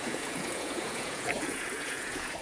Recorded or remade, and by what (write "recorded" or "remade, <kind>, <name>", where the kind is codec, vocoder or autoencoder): remade, vocoder, Vocos